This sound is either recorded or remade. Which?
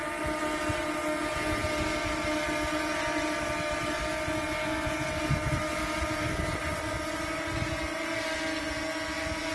recorded